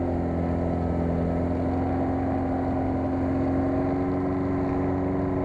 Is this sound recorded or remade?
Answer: recorded